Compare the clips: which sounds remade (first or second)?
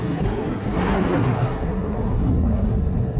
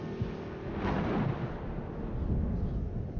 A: first